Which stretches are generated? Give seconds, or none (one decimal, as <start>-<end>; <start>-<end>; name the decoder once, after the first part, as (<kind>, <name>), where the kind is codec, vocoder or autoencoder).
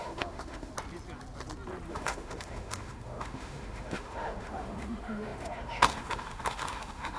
0.0-0.7 (autoencoder, DAC-VAE); 1.9-7.2